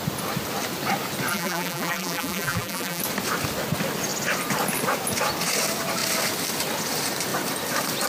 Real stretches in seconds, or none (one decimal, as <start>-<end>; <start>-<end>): 0.0-1.3; 3.0-8.1